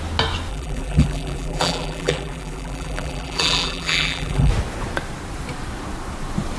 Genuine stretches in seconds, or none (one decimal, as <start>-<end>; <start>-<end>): 0.0-0.5; 4.5-6.6